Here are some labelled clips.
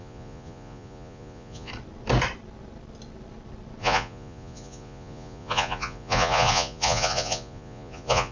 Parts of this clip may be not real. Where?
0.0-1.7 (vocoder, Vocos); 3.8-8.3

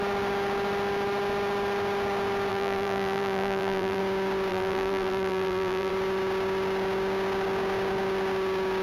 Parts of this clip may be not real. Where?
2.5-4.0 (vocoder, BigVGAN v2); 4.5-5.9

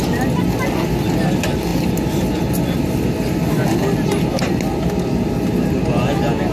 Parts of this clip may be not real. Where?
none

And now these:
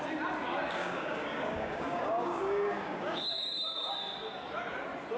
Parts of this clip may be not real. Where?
0.8-3.9 (codec, DAC)

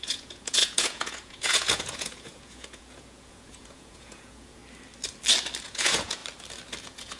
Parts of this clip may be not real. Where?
0.0-4.6 (vocoder, Vocos); 5.6-6.2; 6.8-7.2

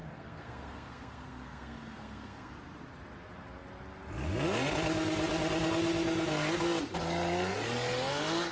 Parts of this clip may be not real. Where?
0.0-2.5 (codec, SNAC)